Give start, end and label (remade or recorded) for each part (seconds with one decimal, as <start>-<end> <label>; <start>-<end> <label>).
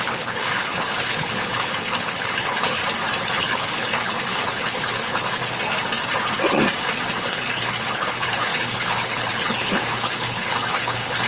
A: 0.0-2.8 remade; 2.8-3.4 recorded; 3.4-5.4 remade; 5.4-7.2 recorded; 7.2-11.3 remade